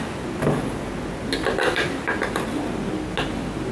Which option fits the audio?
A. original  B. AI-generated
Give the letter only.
A